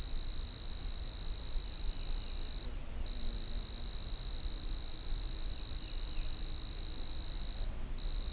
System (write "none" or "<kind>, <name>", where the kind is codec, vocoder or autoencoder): none